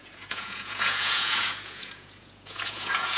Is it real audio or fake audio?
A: fake